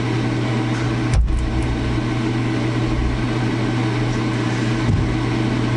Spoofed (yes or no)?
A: no